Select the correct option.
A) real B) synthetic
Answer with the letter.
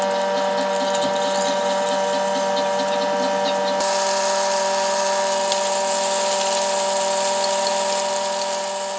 A